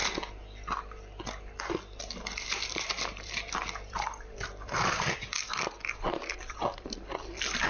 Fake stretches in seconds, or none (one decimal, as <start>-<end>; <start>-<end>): 2.6-7.7